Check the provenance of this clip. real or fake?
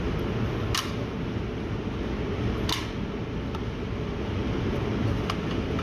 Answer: real